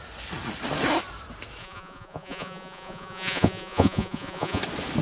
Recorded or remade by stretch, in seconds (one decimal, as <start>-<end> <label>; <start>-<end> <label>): 0.0-1.6 recorded; 1.6-4.6 remade; 4.6-5.0 recorded

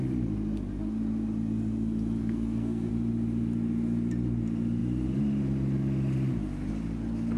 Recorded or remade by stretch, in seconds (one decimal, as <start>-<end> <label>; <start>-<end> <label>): 0.0-2.2 recorded; 2.2-2.9 remade; 2.9-7.4 recorded

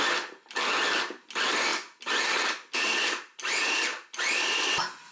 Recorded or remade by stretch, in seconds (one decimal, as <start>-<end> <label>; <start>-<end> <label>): 0.0-5.1 recorded

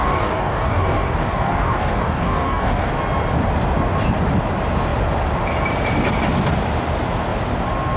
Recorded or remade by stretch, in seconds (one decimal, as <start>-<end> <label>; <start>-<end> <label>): 0.0-2.9 remade; 2.9-8.0 recorded

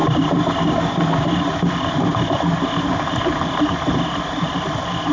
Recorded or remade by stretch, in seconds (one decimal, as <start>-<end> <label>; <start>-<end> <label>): 0.0-5.1 recorded

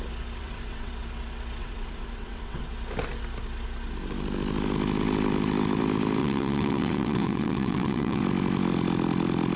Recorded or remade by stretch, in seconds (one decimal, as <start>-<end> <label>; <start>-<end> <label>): 0.0-0.4 recorded; 0.4-0.9 remade; 0.9-1.6 recorded; 1.6-2.6 remade; 2.6-6.2 recorded; 6.2-8.2 remade; 8.2-9.6 recorded

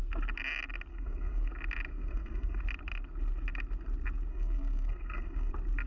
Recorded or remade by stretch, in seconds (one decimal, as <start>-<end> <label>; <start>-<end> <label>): 0.0-0.9 recorded; 0.9-1.5 remade; 1.5-1.9 recorded; 1.9-2.6 remade; 2.6-4.3 recorded; 4.3-5.5 remade; 5.5-5.9 recorded

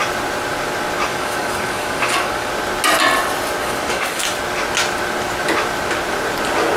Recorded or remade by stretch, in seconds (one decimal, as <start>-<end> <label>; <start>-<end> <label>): 0.0-1.1 recorded; 1.1-2.5 remade; 2.5-3.6 recorded; 3.6-4.2 remade; 4.2-6.8 recorded